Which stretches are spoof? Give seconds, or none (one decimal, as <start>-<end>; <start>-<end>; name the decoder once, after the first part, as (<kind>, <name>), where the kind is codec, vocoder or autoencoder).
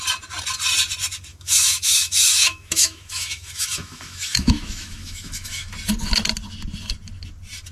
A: 1.3-5.7 (autoencoder, DAC-VAE)